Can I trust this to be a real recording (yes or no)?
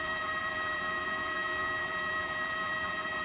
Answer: no